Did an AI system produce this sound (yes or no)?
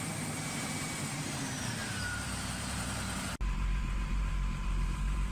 yes